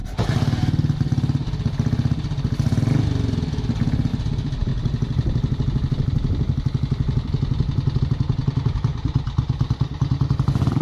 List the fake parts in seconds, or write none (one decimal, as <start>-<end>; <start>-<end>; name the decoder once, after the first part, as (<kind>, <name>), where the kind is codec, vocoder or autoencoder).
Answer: 4.1-4.7 (vocoder, BigVGAN v2); 8.0-8.9; 9.7-10.8